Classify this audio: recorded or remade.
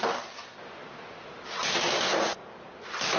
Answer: recorded